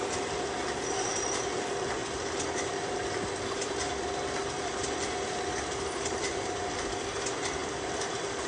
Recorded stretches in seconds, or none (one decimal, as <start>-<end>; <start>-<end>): 0.0-2.0; 6.3-7.6